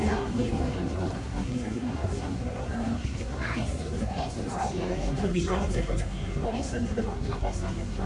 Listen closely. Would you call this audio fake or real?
fake